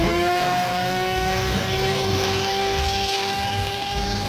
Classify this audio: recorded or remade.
remade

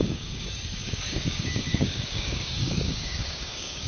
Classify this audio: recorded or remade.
remade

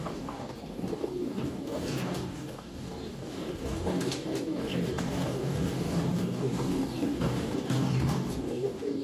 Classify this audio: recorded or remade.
remade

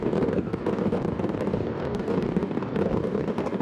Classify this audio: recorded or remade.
remade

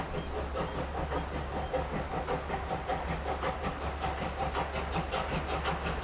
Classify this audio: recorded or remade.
recorded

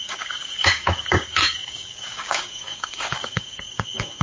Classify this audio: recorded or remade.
remade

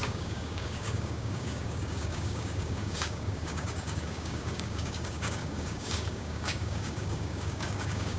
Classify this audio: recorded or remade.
remade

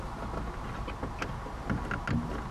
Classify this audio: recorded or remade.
recorded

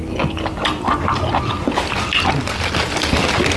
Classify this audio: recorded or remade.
recorded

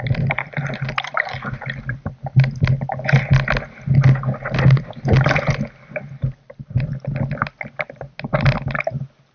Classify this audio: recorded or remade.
recorded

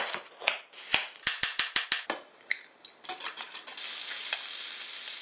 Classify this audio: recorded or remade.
recorded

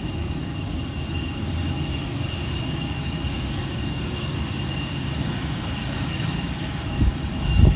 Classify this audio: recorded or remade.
remade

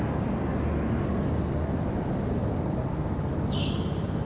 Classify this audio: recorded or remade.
recorded